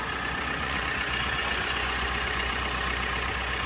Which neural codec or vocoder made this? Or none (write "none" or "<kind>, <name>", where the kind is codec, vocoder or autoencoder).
vocoder, Vocos